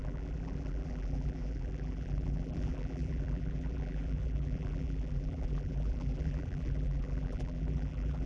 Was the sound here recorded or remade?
remade